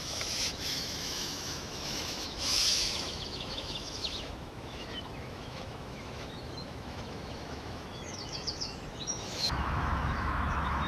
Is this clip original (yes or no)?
no